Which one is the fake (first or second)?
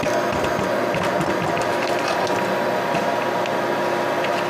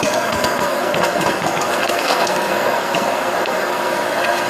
second